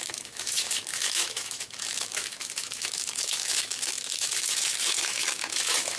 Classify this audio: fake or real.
fake